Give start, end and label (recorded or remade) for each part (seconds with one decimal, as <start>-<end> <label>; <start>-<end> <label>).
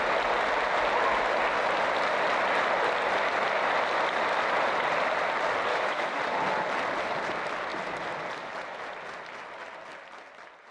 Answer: 0.0-5.7 recorded; 5.7-6.2 remade; 6.2-10.7 recorded